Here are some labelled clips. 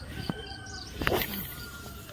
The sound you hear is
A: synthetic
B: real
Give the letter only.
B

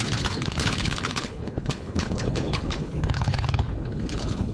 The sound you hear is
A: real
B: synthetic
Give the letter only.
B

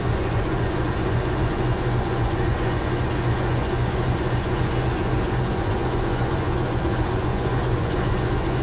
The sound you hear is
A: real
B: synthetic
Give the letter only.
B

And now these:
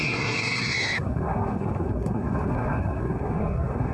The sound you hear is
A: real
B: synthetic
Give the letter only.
B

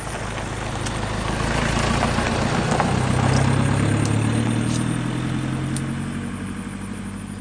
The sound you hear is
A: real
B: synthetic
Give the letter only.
A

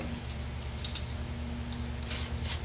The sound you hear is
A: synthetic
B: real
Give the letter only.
B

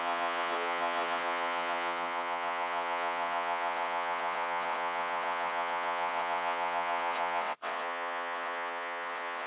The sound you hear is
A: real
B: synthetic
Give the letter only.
B